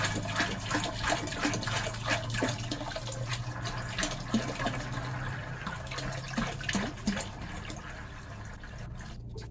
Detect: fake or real real